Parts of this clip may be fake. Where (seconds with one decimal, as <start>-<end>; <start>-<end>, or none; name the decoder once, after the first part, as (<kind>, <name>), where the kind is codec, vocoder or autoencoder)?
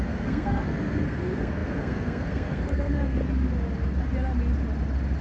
0.0-3.2 (codec, SNAC)